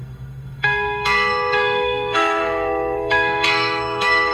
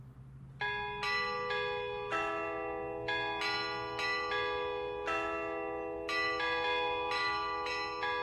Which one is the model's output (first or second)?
first